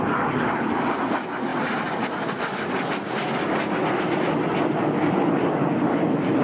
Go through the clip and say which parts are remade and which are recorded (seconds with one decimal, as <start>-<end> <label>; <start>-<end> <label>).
0.0-6.4 recorded